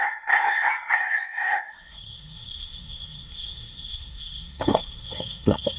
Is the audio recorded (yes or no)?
no